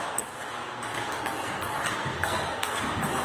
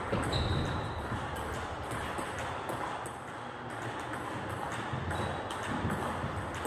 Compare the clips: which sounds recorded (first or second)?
second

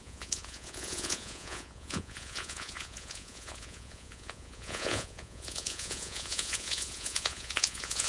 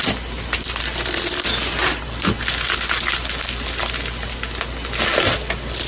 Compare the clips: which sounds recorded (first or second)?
second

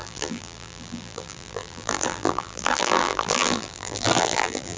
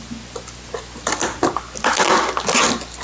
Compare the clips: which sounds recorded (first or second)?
second